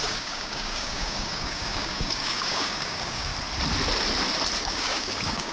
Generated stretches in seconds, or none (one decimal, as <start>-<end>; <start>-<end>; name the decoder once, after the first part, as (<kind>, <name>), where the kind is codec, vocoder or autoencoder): 0.0-3.3 (codec, DAC); 4.6-5.5